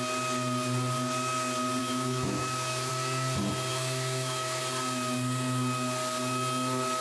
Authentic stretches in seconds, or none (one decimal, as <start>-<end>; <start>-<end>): 0.0-1.8; 2.9-3.7; 4.6-7.0